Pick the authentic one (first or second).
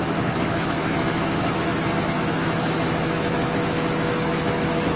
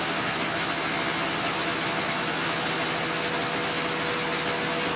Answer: second